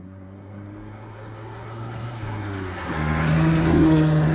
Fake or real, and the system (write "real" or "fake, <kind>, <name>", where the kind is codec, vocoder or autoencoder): fake, codec, SNAC